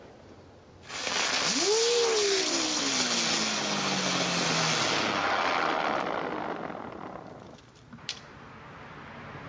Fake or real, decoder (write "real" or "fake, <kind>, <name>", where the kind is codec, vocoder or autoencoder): real